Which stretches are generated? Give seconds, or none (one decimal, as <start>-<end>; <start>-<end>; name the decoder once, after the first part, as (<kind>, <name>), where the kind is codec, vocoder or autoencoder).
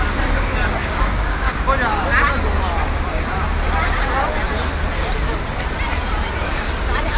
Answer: 0.8-1.5 (codec, DAC)